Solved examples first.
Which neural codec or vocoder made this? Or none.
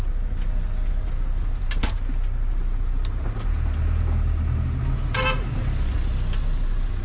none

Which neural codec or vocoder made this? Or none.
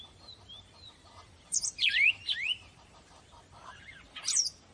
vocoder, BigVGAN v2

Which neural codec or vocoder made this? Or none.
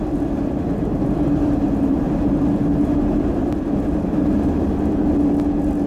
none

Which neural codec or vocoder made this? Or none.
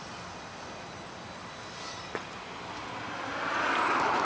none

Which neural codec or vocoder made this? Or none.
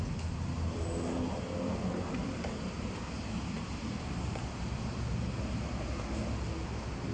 none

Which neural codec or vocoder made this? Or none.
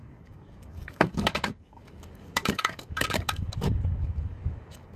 codec, DAC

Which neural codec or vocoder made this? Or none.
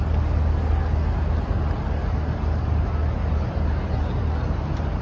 none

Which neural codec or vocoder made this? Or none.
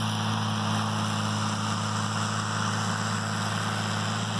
none